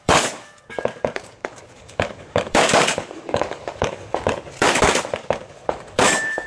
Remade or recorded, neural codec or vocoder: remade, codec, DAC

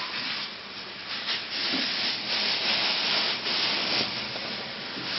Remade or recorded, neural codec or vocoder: recorded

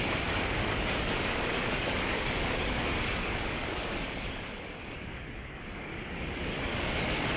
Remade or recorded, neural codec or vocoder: remade, codec, DAC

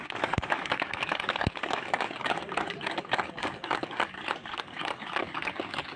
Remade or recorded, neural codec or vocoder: remade, codec, DAC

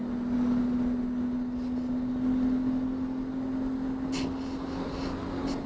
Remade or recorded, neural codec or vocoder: recorded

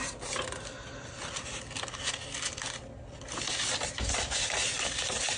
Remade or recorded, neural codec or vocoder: recorded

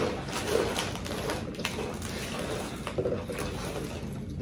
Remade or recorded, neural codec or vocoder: recorded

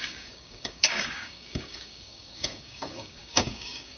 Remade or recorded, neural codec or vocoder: remade, codec, DAC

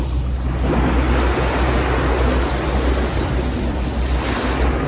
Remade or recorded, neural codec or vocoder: recorded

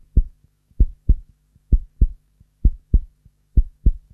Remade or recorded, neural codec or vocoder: remade, codec, DAC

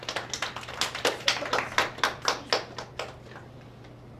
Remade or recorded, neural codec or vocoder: recorded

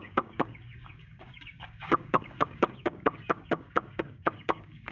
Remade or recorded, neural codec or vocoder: remade, codec, DAC